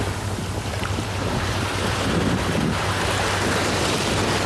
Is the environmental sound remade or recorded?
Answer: recorded